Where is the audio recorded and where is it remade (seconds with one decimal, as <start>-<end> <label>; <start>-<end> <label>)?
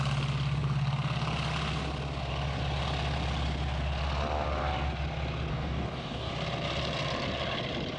0.0-5.5 recorded; 5.5-6.3 remade; 6.3-8.0 recorded